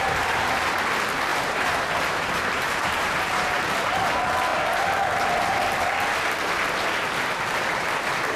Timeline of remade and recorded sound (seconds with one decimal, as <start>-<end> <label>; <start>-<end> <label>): 0.0-1.3 recorded; 1.3-3.6 remade; 3.6-8.4 recorded